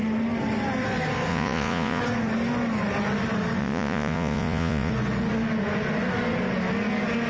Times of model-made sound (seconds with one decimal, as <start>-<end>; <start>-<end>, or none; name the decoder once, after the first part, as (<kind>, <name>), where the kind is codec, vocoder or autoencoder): 1.3-2.0 (vocoder, Vocos); 3.6-4.9